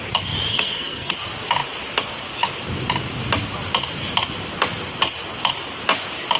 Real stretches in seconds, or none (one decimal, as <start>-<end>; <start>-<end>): 0.0-0.5; 1.1-6.4